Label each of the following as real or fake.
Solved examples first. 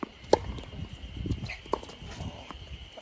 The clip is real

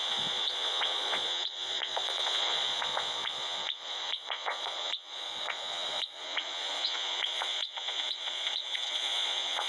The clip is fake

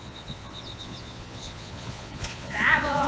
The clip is fake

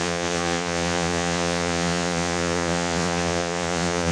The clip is fake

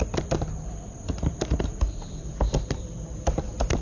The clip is real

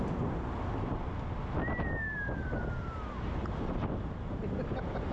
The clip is real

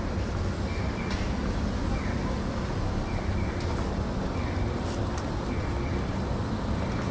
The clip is real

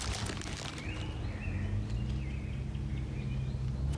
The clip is real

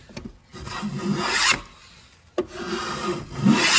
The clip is real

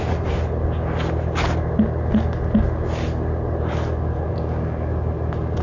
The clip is real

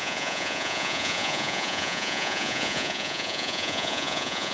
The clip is fake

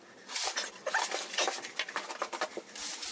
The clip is real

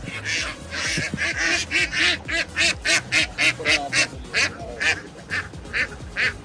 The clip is real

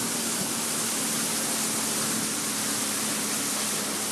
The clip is real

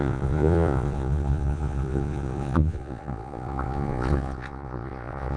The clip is fake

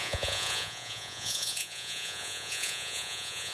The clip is fake